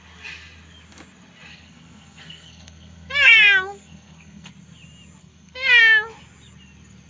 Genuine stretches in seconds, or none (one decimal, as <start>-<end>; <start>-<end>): 0.0-1.5; 4.5-5.2; 5.8-7.1

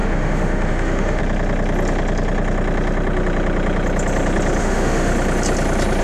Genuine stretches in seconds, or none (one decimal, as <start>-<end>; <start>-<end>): 1.2-4.6; 5.1-6.0